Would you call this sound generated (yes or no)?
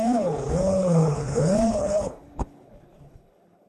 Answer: yes